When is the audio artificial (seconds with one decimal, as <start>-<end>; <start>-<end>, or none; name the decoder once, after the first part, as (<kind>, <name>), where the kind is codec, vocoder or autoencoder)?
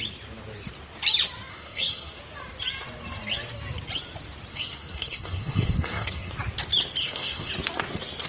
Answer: 1.5-2.2 (codec, SNAC); 4.5-6.3; 7.0-7.5